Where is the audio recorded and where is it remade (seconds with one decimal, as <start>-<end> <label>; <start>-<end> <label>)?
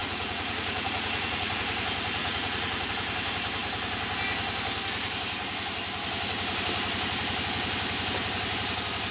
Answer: 0.0-1.6 remade; 1.6-2.2 recorded; 2.2-2.9 remade; 2.9-9.1 recorded